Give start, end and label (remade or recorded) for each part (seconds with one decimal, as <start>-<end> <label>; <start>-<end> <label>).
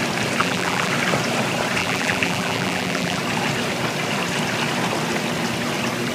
0.0-0.4 recorded; 0.4-0.9 remade; 0.9-1.8 recorded; 1.8-3.2 remade; 3.2-6.1 recorded